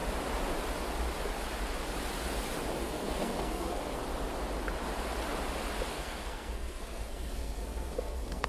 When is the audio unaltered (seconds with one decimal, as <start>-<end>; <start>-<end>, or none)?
0.0-2.8; 4.0-5.9